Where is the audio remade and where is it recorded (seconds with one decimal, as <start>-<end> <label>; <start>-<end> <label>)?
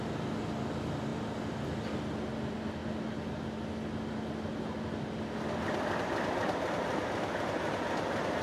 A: 0.0-8.4 recorded